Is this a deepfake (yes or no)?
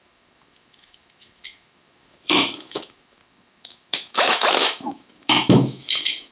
yes